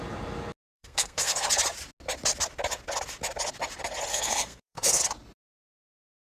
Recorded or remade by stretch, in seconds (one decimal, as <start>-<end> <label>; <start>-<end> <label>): 0.0-0.6 recorded; 0.6-1.5 remade; 1.5-4.1 recorded; 4.1-5.0 remade; 5.0-6.3 recorded